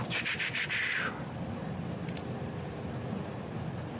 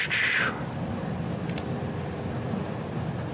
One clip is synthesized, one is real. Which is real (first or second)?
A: second